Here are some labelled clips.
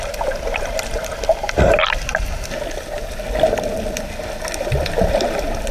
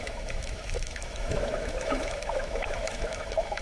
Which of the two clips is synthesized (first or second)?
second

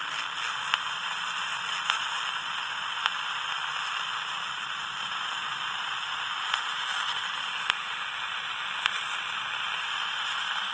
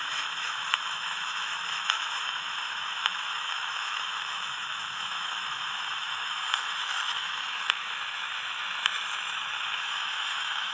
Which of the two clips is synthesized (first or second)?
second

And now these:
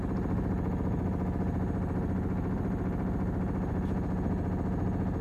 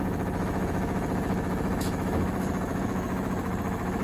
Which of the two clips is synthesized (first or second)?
second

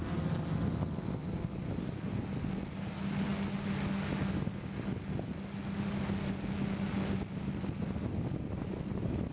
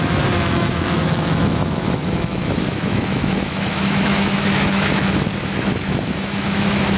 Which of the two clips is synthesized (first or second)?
second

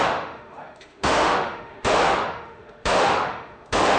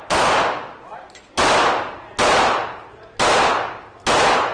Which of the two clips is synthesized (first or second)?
first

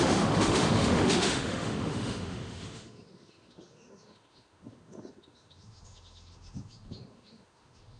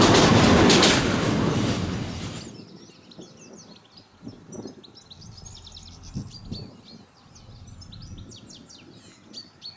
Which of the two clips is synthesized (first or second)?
first